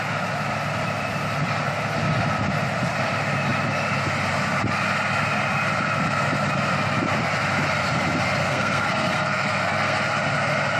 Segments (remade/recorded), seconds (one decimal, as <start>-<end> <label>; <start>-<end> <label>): 0.0-8.4 recorded; 8.4-10.1 remade; 10.1-10.8 recorded